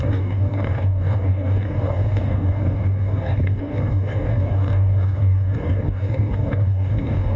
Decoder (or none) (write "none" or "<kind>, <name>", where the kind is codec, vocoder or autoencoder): codec, DAC